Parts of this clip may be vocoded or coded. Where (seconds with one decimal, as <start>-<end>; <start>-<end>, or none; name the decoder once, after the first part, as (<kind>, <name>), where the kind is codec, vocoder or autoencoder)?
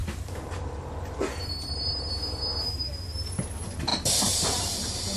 0.0-5.2 (vocoder, BigVGAN v2)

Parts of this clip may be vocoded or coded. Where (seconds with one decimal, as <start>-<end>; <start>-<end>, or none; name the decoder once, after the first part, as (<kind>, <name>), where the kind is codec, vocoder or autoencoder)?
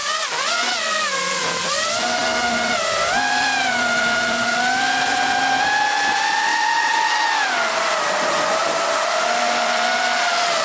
0.0-10.6 (vocoder, BigVGAN v2)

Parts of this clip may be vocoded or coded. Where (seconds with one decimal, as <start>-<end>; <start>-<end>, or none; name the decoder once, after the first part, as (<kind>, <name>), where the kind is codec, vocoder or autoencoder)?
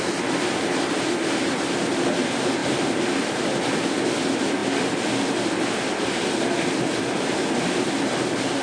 2.6-3.6 (vocoder, BigVGAN v2)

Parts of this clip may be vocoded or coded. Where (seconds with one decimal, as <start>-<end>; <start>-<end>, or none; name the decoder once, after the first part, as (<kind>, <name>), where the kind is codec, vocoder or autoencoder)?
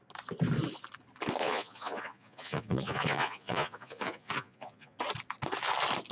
1.4-5.0 (vocoder, Vocos)